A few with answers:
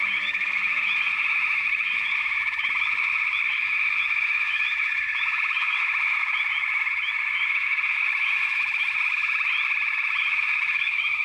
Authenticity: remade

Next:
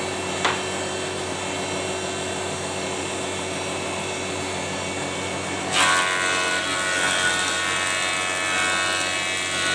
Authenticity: recorded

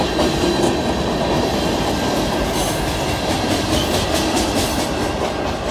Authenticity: recorded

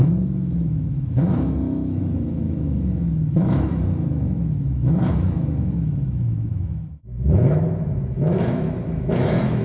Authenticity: remade